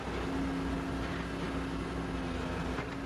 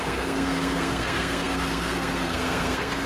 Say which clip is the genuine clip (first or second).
first